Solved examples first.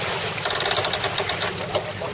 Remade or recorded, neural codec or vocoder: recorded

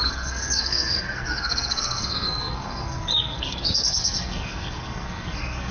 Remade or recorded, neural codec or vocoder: remade, codec, SNAC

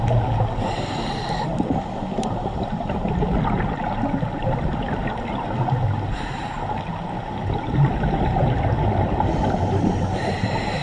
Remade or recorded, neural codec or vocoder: recorded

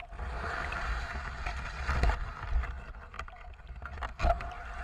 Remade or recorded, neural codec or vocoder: recorded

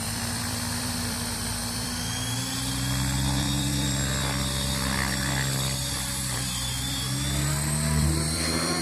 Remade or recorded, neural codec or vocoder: remade, vocoder, BigVGAN v2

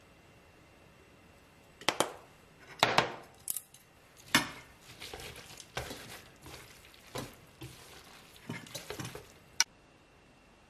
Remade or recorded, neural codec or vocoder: recorded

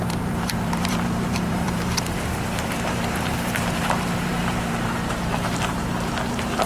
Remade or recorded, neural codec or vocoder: remade, vocoder, BigVGAN v2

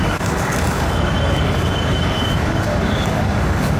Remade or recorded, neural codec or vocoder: remade, codec, DAC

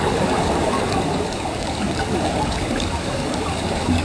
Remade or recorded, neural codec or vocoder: remade, codec, DAC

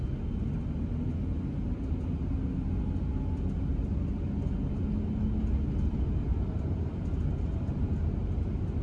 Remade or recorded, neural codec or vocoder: recorded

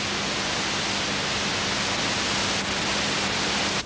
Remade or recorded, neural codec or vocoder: recorded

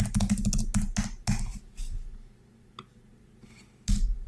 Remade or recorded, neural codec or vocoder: recorded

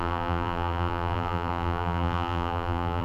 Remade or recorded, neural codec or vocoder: remade, vocoder, BigVGAN v2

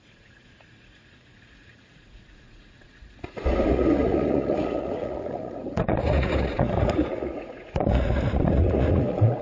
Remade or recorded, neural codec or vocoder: remade, vocoder, Vocos